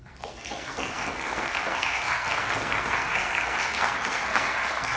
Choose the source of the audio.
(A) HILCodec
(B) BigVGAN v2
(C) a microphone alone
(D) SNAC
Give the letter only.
D